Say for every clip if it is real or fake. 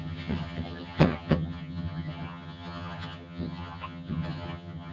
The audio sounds fake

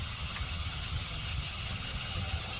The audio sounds fake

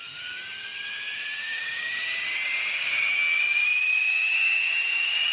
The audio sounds fake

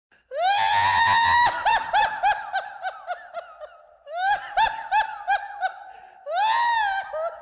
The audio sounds real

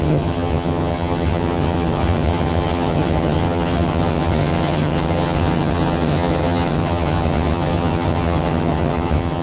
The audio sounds fake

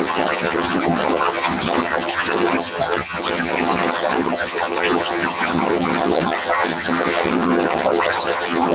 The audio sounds fake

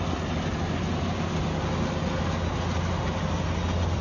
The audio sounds real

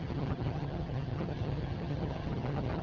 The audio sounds fake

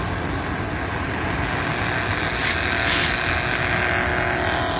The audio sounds real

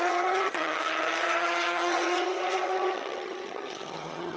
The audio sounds fake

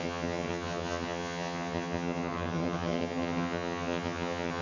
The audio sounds fake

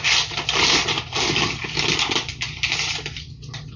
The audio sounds real